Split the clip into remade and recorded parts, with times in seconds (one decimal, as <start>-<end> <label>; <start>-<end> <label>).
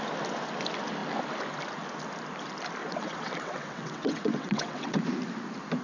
0.0-2.8 recorded; 2.8-5.0 remade; 5.0-5.8 recorded